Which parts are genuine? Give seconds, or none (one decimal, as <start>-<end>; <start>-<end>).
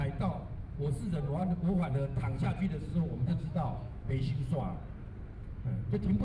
0.0-1.4; 2.5-2.9; 4.6-6.2